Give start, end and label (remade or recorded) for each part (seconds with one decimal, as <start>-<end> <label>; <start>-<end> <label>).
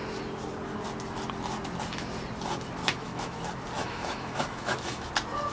0.0-2.8 recorded; 2.8-3.4 remade; 3.4-3.8 recorded; 3.8-5.1 remade; 5.1-5.5 recorded